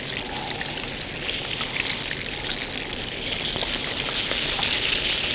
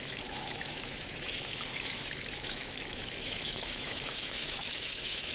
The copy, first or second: second